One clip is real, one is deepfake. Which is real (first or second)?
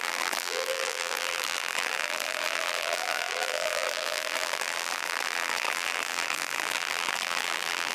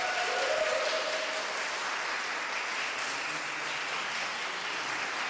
second